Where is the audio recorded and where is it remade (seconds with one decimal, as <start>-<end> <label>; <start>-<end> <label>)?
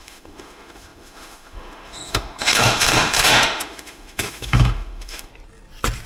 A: 0.0-5.3 remade; 5.3-6.1 recorded